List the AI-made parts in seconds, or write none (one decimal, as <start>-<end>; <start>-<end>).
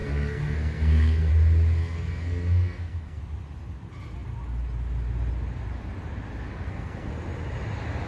0.0-1.3; 1.8-3.2; 6.5-7.1